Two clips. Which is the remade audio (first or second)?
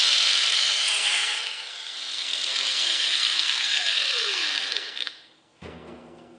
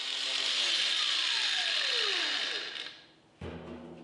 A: first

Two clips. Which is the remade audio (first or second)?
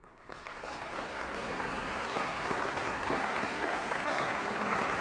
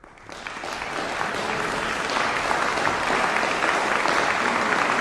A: first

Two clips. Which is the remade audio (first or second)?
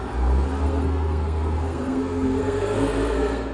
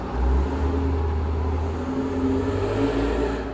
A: first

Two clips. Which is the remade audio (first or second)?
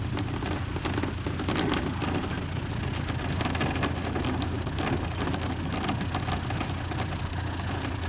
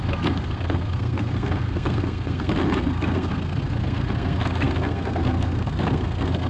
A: second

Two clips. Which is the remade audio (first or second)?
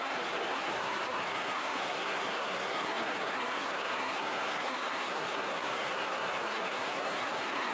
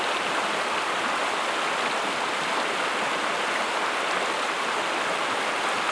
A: first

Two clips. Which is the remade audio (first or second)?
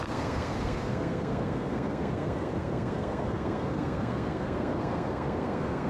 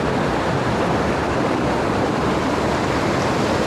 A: first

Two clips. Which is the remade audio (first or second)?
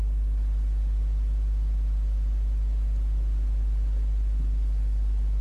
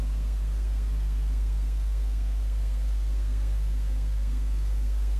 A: second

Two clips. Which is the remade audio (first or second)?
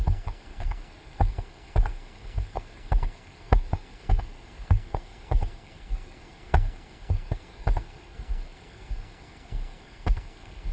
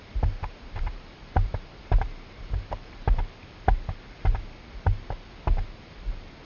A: first